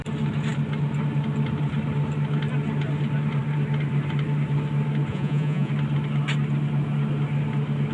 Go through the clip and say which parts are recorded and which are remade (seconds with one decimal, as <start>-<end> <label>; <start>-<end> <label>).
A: 0.0-5.1 recorded; 5.1-5.7 remade; 5.7-7.9 recorded